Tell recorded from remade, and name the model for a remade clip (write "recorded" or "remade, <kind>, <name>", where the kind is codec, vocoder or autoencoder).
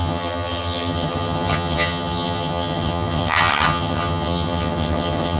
remade, vocoder, HiFi-GAN